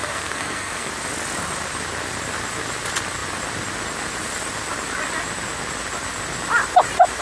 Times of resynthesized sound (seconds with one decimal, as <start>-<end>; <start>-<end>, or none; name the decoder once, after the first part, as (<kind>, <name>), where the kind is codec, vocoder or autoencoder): 0.0-0.9 (codec, SNAC)

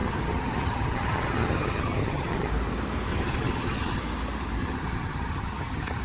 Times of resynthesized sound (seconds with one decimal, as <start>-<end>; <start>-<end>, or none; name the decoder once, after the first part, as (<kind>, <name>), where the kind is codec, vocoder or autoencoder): 0.0-2.5 (vocoder, HiFi-GAN); 3.1-4.0; 4.6-6.0

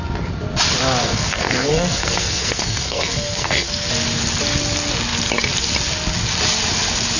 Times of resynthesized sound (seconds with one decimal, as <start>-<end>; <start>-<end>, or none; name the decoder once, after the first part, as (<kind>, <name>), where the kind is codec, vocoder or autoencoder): 1.0-3.9 (codec, SNAC)

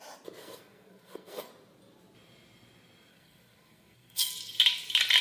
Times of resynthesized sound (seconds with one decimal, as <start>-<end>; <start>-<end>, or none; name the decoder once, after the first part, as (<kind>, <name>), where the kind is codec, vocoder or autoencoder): 0.4-1.5 (codec, SNAC); 3.1-4.3

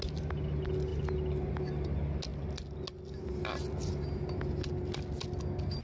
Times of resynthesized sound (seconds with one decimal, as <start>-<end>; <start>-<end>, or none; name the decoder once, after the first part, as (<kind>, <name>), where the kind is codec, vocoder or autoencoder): none